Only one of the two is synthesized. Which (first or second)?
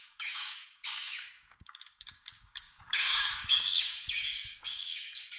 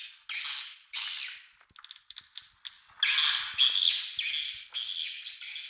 first